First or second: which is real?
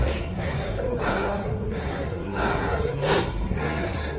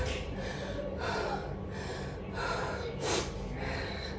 second